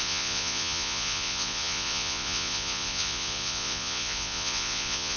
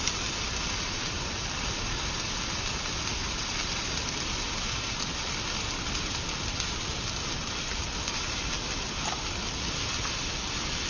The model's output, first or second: first